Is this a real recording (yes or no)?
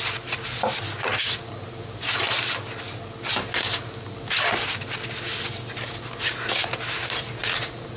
yes